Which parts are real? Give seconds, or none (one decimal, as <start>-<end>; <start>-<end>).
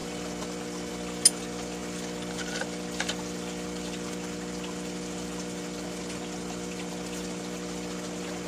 0.0-8.5